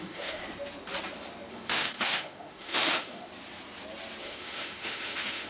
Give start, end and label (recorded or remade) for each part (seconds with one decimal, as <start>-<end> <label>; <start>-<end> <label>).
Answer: 0.0-0.4 remade; 0.4-1.5 recorded; 1.5-3.3 remade; 3.3-4.2 recorded; 4.2-5.5 remade